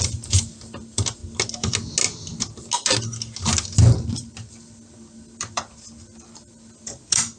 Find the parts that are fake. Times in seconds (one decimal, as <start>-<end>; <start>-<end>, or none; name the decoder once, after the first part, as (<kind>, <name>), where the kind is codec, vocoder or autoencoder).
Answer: 0.0-1.2 (vocoder, BigVGAN v2); 4.1-7.4